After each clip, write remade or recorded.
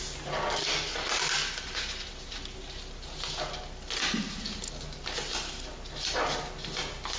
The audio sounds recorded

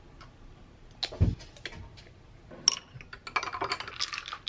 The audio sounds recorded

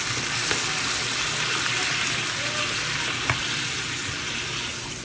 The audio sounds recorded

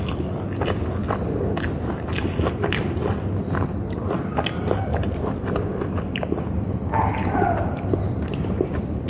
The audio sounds recorded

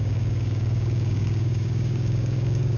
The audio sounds remade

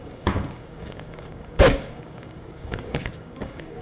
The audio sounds remade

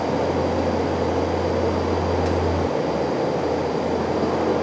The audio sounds recorded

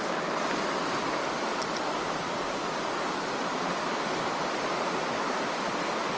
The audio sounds recorded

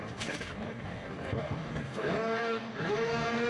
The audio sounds remade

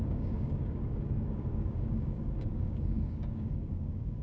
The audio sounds remade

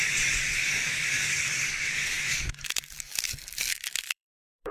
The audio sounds remade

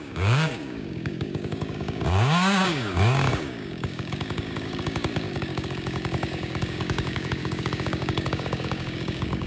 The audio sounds remade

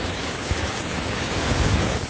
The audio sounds remade